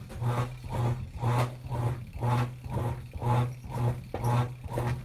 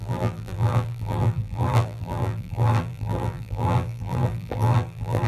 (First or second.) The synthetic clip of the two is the second